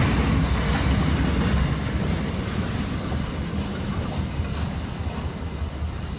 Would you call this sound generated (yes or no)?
no